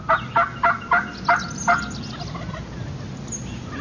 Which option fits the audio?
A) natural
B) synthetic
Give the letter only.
A